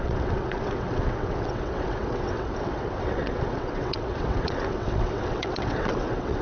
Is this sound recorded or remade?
remade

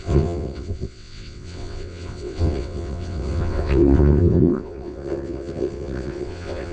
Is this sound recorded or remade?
remade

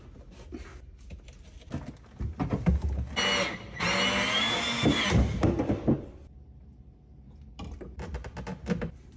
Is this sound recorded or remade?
recorded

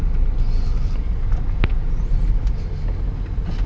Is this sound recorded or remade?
recorded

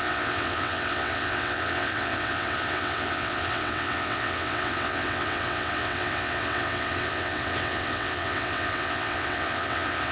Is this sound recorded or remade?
remade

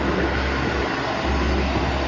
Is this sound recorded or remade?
recorded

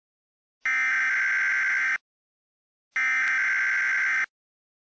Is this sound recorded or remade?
recorded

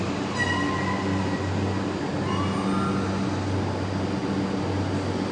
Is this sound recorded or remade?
recorded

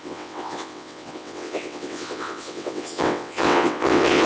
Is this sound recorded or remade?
remade